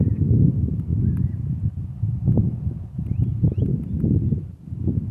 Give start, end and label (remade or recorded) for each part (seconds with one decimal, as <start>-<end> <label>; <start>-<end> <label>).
0.0-0.9 recorded; 0.9-3.6 remade; 3.6-5.1 recorded